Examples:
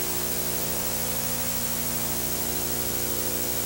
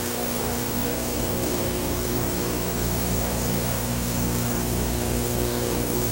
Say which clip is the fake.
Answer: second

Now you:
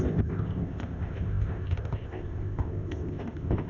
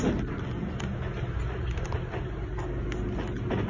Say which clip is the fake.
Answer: first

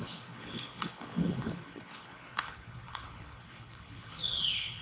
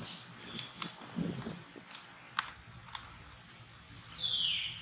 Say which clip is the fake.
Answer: first